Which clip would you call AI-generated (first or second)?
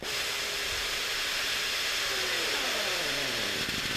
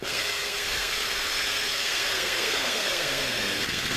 second